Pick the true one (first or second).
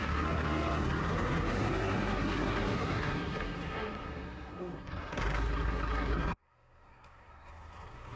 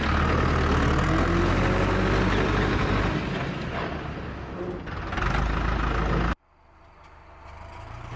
second